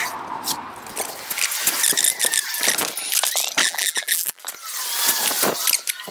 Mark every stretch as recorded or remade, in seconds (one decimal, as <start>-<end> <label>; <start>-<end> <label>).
0.0-3.6 recorded; 3.6-4.4 remade; 4.4-6.1 recorded